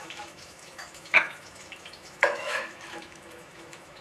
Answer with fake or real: fake